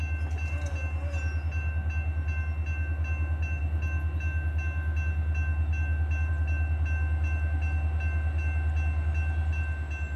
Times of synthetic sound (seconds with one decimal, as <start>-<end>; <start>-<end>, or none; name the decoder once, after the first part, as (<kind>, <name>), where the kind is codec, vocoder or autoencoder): none